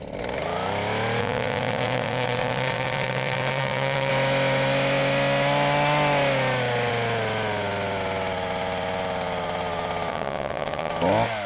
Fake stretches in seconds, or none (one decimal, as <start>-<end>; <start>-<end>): 1.2-4.1; 10.1-10.9